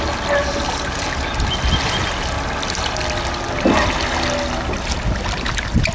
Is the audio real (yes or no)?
yes